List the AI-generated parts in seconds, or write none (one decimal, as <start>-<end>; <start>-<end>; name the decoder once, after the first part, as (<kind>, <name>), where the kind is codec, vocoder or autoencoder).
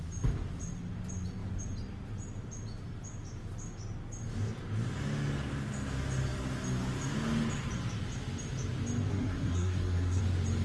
9.1-10.2 (codec, SNAC)